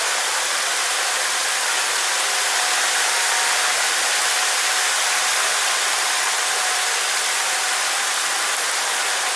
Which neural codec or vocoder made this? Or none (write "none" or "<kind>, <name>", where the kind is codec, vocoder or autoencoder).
none